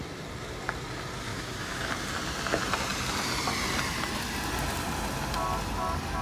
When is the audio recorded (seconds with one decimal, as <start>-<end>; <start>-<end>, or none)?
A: 0.0-1.3; 1.9-6.2